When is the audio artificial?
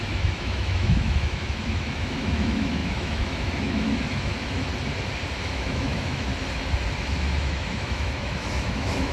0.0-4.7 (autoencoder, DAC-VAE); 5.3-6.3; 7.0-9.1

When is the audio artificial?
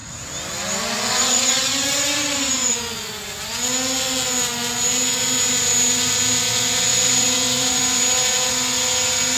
1.6-2.7 (vocoder, BigVGAN v2); 6.9-8.5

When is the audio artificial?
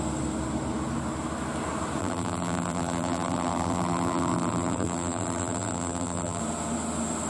2.0-6.4 (vocoder, BigVGAN v2)